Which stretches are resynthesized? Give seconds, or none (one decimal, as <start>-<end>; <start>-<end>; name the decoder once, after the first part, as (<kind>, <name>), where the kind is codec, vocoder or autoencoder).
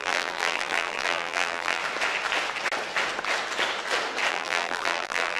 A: 0.0-1.8 (vocoder, BigVGAN v2); 4.3-5.4